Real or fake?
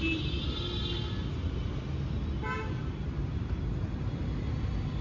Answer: real